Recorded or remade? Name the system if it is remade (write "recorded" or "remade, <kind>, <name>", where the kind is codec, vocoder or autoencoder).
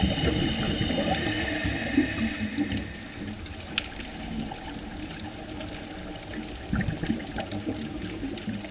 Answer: recorded